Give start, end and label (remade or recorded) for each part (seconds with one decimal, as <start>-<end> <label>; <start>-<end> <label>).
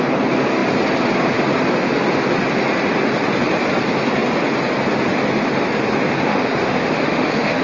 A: 0.0-6.3 recorded; 6.3-7.6 remade